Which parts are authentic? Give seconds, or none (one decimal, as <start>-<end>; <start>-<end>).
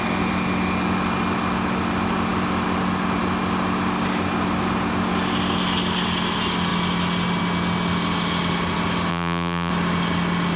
0.0-9.1; 9.7-10.6